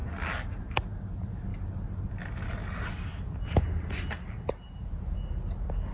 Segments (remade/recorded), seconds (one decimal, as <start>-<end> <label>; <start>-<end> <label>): 0.0-5.9 recorded